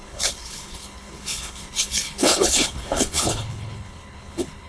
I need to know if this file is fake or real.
fake